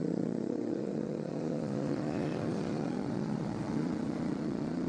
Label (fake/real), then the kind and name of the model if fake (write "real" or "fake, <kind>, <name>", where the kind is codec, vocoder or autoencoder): fake, vocoder, Vocos